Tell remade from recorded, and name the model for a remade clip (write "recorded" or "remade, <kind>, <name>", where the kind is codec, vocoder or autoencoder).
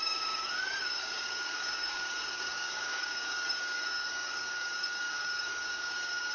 remade, codec, DAC